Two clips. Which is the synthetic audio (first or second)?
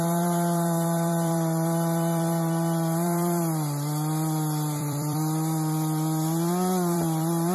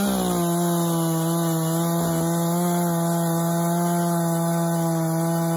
first